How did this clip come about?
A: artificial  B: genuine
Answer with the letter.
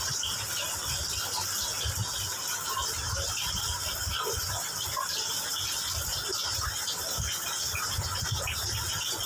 B